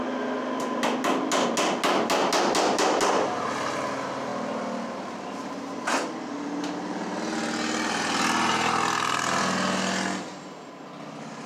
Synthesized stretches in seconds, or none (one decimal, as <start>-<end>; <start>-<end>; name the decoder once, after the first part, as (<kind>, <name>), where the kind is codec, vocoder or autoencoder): none